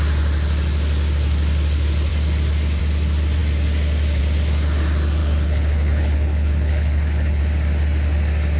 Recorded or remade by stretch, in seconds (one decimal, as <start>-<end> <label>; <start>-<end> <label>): 0.0-5.2 recorded; 5.2-7.4 remade; 7.4-8.6 recorded